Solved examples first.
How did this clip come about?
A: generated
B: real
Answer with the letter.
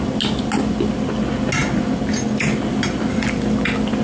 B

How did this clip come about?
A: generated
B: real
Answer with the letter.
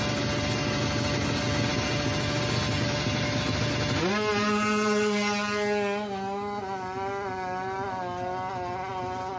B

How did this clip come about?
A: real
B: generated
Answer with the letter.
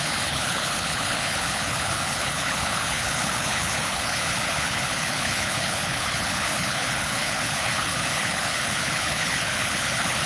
B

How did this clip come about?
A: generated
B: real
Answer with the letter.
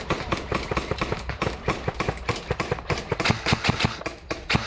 B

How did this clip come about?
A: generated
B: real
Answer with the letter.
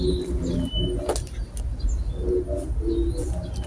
B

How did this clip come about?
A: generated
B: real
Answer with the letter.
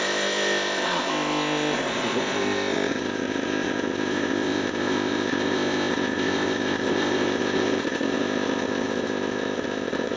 A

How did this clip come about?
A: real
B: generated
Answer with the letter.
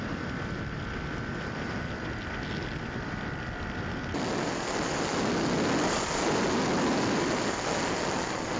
A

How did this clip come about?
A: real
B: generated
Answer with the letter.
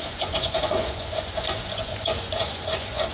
B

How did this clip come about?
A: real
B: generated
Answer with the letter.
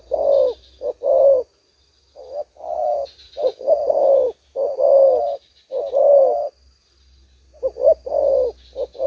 A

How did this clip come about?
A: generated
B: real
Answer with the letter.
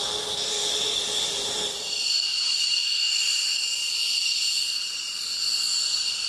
B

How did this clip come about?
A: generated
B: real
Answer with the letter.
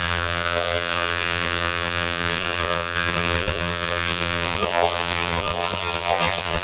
A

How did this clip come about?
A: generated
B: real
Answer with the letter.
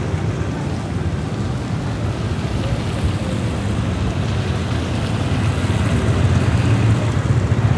B